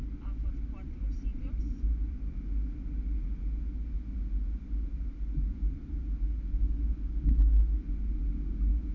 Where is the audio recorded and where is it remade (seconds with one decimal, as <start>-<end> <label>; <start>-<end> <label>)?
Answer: 0.0-2.3 remade; 2.3-8.9 recorded